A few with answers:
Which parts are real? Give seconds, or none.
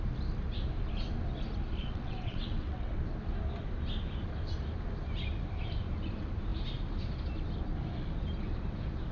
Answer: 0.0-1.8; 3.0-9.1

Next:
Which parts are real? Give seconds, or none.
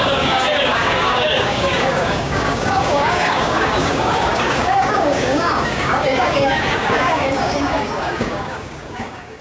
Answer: none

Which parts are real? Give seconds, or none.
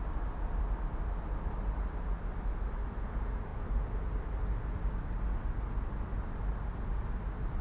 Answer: 0.0-7.6